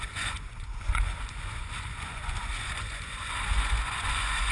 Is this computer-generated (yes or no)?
yes